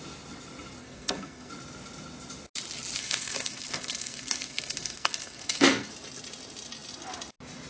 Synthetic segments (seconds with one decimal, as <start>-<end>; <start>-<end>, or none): 0.8-1.5; 3.0-5.9